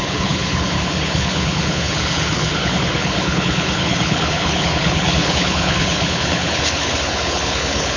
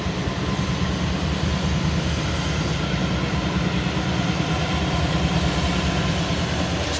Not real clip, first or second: first